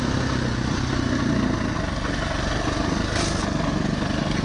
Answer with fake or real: real